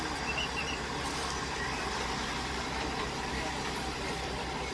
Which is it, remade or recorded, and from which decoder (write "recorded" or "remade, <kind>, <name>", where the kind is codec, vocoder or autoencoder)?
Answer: recorded